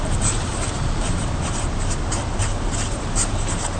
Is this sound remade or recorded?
remade